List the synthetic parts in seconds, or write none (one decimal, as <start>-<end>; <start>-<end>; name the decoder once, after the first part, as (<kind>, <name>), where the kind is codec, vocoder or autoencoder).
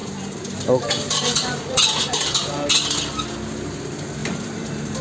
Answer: 0.0-2.7 (vocoder, BigVGAN v2); 4.2-5.0